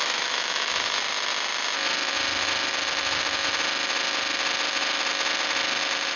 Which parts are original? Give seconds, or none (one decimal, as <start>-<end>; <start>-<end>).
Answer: 1.0-6.2